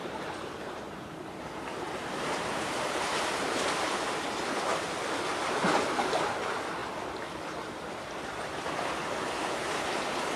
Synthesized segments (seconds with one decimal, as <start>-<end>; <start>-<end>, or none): 0.0-4.0